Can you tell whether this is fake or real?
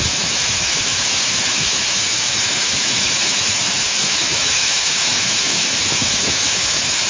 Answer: fake